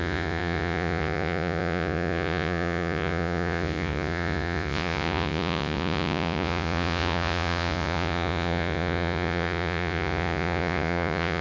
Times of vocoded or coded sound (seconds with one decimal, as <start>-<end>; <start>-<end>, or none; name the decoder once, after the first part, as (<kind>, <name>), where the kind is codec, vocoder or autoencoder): 0.0-11.4 (vocoder, Vocos)